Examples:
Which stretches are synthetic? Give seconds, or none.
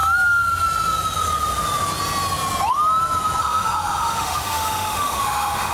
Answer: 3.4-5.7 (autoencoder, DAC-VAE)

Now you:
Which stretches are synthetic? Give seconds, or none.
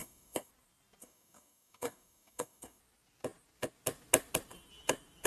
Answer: 0.0-0.5 (codec, DAC); 1.0-2.8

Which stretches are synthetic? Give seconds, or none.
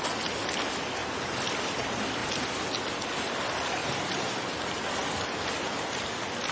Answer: 1.0-1.6 (vocoder, BigVGAN v2); 3.8-4.6